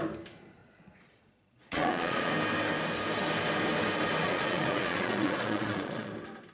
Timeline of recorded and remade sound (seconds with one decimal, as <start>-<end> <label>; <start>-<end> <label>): 0.0-0.6 recorded; 0.6-2.3 remade; 2.3-4.2 recorded; 4.2-6.1 remade; 6.1-6.5 recorded